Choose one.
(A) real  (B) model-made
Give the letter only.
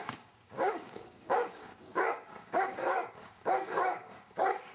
B